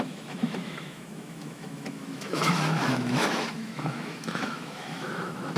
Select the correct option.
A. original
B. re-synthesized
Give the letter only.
B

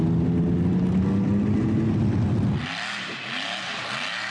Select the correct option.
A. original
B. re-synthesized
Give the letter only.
A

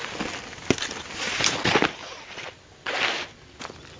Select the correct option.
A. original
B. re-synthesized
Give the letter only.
A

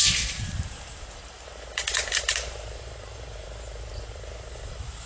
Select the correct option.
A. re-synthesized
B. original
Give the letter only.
A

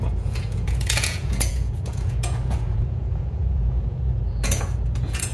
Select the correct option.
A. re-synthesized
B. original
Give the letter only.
A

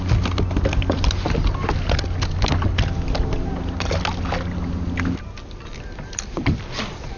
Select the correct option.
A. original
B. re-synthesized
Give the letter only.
A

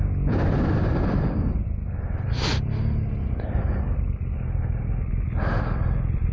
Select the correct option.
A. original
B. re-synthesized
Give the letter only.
A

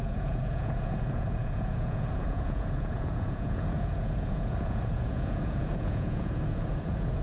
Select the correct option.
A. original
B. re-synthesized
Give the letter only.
B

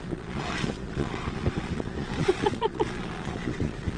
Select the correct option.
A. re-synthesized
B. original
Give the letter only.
A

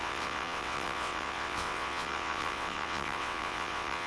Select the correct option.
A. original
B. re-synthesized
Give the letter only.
B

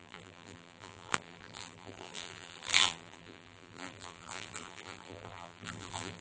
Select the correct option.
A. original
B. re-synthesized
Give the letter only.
B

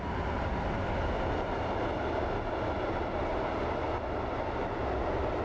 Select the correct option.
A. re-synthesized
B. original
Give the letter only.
B